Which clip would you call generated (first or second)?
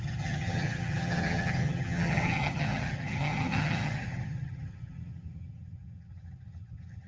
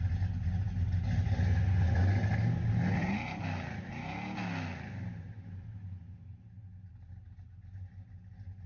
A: first